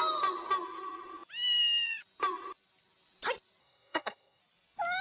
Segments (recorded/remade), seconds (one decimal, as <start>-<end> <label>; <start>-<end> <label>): 0.0-3.6 recorded; 3.6-4.4 remade; 4.4-5.0 recorded